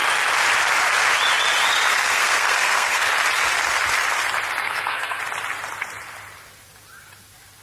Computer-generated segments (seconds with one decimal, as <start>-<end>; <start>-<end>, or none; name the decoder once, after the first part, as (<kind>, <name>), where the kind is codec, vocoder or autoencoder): 1.9-3.1 (codec, SNAC); 4.6-5.2

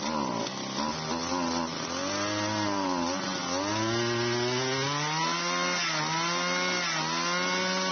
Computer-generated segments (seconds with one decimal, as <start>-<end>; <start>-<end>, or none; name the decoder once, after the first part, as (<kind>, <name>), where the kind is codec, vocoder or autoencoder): none

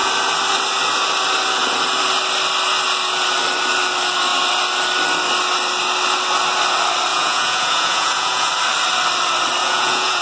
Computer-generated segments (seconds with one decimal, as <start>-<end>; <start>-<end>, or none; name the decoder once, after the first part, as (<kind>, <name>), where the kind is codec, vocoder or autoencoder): 7.1-8.5 (vocoder, Vocos); 9.6-10.2

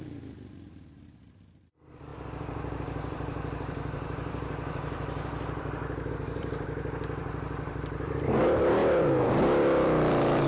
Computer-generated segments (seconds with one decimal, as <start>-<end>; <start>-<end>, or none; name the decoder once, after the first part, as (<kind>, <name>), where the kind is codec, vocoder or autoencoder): 0.0-10.5 (vocoder, BigVGAN v2)

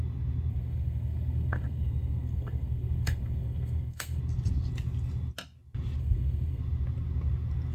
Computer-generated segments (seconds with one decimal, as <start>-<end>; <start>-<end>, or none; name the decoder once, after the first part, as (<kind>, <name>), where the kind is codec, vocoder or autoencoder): 0.5-4.2 (codec, SNAC); 6.0-6.6

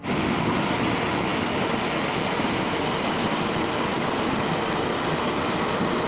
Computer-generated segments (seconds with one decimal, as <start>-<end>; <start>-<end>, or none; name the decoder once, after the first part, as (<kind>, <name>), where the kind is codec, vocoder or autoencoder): none

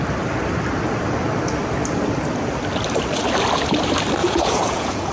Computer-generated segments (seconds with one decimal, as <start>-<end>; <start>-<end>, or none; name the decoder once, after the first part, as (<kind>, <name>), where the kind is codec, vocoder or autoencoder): 4.2-5.1 (vocoder, Vocos)